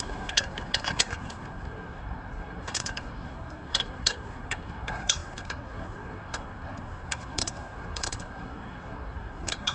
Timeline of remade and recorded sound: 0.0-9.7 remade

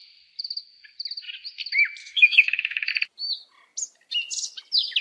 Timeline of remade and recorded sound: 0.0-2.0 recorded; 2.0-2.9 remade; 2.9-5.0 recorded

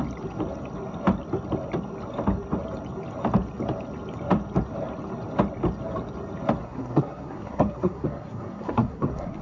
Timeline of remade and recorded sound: 0.0-6.6 recorded; 6.6-9.4 remade